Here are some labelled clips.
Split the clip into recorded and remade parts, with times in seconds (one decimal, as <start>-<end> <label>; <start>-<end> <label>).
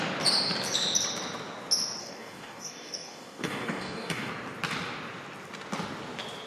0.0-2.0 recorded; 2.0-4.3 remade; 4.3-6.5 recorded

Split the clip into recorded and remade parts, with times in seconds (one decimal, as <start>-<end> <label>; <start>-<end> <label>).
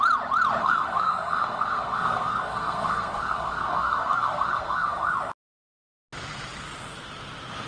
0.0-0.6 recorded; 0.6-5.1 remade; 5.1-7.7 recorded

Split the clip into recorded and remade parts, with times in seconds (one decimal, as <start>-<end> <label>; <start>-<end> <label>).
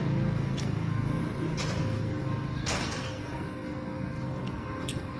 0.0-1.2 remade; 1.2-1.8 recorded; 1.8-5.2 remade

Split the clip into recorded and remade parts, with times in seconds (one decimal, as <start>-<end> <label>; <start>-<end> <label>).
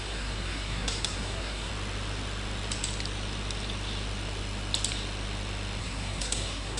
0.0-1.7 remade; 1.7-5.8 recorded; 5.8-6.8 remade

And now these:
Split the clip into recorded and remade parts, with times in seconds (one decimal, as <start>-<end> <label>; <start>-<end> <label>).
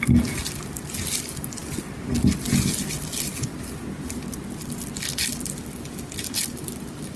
0.0-7.2 recorded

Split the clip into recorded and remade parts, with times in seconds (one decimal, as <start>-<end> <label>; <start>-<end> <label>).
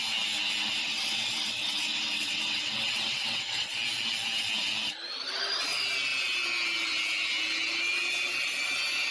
0.0-0.8 recorded; 0.8-3.7 remade; 3.7-9.1 recorded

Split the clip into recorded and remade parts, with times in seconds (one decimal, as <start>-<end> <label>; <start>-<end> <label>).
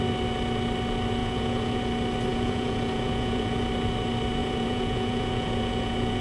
0.0-1.2 recorded; 1.2-1.8 remade; 1.8-2.3 recorded; 2.3-3.7 remade; 3.7-4.4 recorded; 4.4-6.2 remade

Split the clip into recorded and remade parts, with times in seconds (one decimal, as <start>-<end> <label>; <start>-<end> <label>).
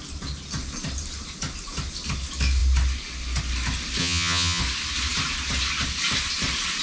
0.0-4.0 recorded; 4.0-4.6 remade; 4.6-6.8 recorded